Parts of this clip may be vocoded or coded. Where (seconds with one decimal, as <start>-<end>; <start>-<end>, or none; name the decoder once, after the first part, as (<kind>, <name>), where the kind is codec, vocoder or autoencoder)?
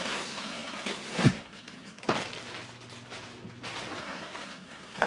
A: 0.0-2.1 (codec, SNAC); 4.0-5.1